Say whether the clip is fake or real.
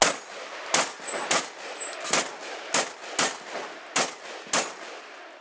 real